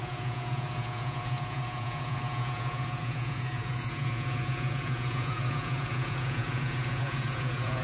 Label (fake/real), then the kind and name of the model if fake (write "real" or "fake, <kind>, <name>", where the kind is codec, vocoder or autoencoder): fake, vocoder, Vocos